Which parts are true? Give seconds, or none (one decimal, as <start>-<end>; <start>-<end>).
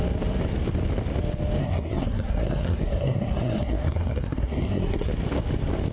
0.0-1.6; 5.1-5.9